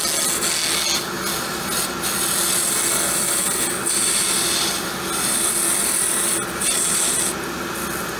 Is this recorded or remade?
recorded